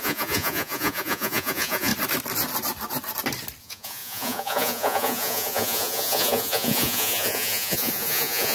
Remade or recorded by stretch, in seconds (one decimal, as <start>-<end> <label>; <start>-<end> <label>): 0.0-1.9 remade; 1.9-3.6 recorded; 3.6-8.5 remade